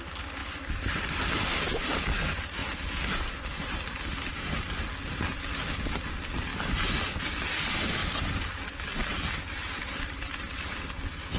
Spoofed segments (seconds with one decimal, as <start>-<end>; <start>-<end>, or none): none